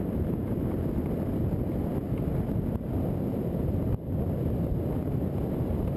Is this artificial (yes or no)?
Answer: no